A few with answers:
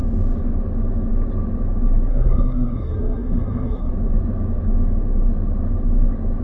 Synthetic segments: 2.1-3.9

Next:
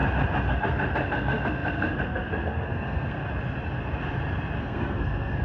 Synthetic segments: 0.5-3.2; 4.6-5.4